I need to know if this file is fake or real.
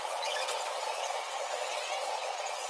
fake